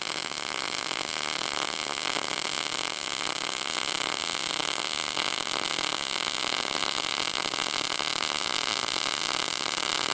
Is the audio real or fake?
real